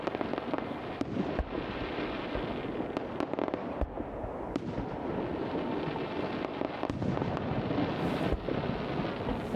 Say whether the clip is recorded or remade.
recorded